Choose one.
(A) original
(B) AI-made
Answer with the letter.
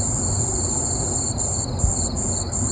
A